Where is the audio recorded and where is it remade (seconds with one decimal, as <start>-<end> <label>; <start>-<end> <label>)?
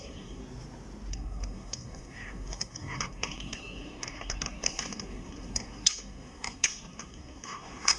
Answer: 0.0-0.4 remade; 0.4-1.1 recorded; 1.1-8.0 remade